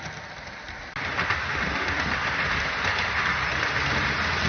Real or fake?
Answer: real